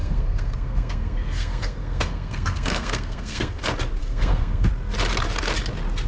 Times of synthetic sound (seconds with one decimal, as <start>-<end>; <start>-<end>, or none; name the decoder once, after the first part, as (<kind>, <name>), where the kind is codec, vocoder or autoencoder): 0.0-3.6 (codec, SNAC); 4.0-4.7